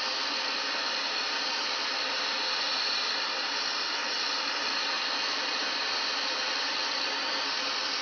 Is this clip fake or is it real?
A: real